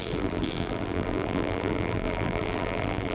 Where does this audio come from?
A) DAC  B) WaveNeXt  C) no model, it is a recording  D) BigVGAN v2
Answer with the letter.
D